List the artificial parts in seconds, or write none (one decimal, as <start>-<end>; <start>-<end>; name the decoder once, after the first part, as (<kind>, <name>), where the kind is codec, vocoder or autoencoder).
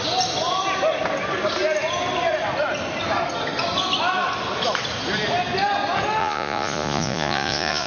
6.2-7.9 (vocoder, Vocos)